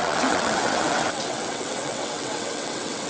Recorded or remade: remade